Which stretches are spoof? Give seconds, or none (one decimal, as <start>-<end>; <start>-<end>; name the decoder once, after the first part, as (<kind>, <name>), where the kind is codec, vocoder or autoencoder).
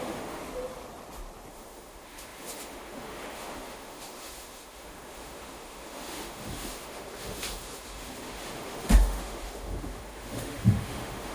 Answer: 0.0-0.4 (autoencoder, DAC-VAE); 1.5-11.3